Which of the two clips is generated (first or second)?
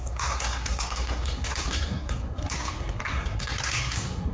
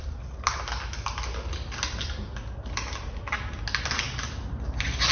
first